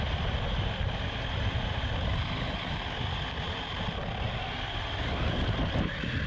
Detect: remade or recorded recorded